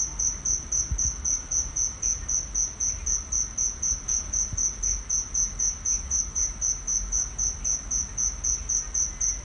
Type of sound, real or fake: real